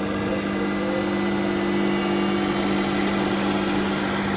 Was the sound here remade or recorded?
recorded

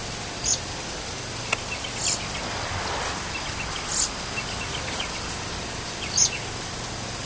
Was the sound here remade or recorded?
recorded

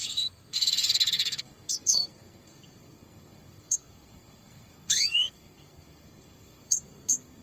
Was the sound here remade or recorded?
remade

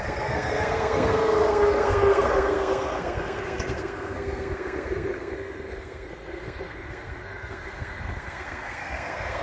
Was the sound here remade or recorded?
remade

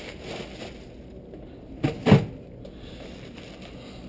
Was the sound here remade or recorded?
recorded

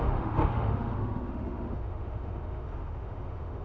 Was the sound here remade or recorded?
remade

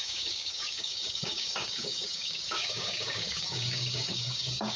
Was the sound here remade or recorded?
remade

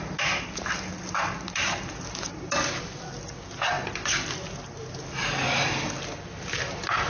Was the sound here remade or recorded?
recorded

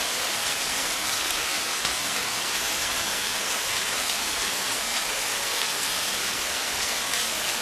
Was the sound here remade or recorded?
remade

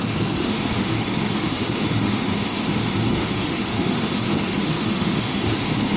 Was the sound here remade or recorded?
remade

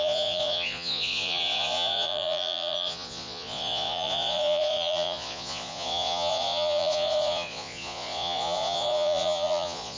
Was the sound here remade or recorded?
remade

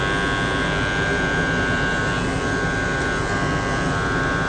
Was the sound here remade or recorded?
recorded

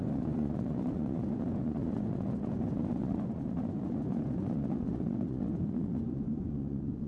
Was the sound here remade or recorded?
remade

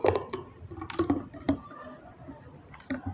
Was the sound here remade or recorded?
recorded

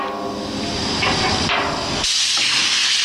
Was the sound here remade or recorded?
recorded